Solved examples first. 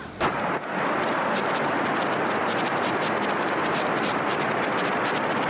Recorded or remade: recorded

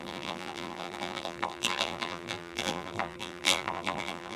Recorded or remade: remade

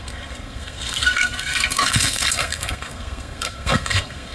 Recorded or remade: remade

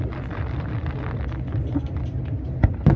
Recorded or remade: recorded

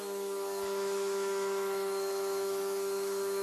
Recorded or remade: remade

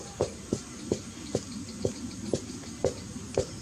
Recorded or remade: recorded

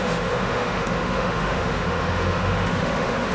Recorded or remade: remade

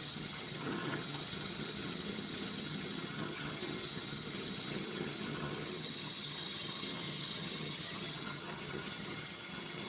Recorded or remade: remade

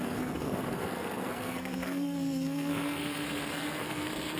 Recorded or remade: remade